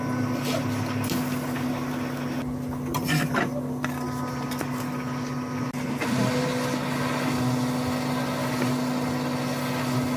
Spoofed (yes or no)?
no